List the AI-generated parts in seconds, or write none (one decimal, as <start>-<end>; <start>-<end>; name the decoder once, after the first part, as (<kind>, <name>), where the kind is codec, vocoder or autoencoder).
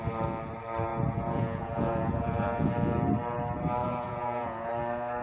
0.9-2.7 (vocoder, Vocos); 3.8-4.7